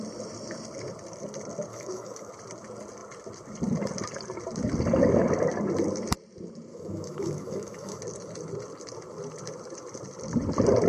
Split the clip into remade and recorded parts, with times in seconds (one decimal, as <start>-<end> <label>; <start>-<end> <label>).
0.0-1.7 recorded; 1.7-2.3 remade; 2.3-6.7 recorded; 6.7-8.0 remade; 8.0-10.9 recorded